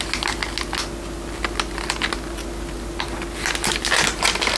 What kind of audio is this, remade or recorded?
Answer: recorded